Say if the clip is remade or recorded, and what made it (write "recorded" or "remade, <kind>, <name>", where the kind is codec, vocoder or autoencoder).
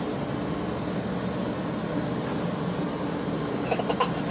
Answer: recorded